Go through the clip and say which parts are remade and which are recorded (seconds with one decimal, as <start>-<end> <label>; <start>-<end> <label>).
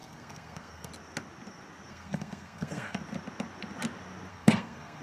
0.0-0.9 remade; 0.9-1.9 recorded; 1.9-3.0 remade; 3.0-4.3 recorded; 4.3-5.0 remade